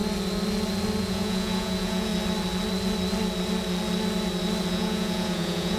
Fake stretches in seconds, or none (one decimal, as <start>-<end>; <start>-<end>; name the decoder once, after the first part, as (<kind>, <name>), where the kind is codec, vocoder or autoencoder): 1.0-2.1 (vocoder, Vocos); 4.7-5.8